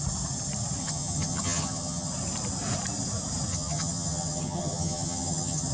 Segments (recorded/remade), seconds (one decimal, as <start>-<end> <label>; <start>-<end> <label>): 0.0-0.8 recorded; 0.8-2.1 remade; 2.1-3.5 recorded; 3.5-5.7 remade